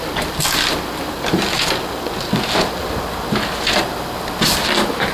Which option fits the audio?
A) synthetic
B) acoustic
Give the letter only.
B